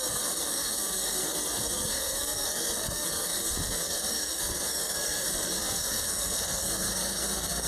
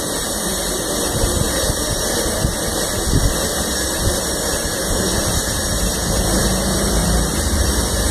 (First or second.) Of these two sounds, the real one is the second